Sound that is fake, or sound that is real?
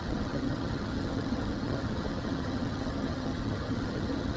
fake